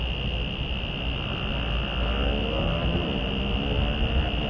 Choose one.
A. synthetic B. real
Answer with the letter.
B